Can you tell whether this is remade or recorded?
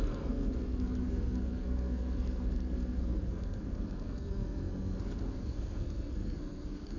remade